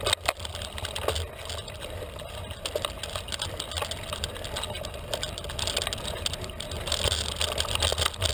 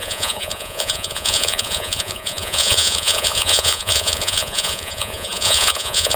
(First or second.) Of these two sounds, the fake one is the second